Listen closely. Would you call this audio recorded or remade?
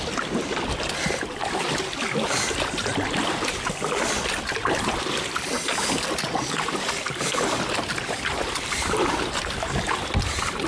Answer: recorded